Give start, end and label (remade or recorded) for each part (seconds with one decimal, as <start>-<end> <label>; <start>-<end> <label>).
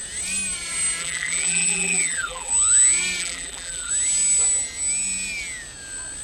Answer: 0.0-1.0 recorded; 1.0-2.5 remade; 2.5-3.2 recorded; 3.2-3.9 remade; 3.9-6.2 recorded